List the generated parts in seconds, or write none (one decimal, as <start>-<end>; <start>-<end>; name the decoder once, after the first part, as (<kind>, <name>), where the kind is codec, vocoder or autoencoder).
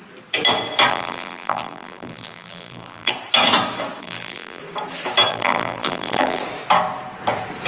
0.9-3.1 (vocoder, BigVGAN v2); 4.0-4.6; 5.3-6.4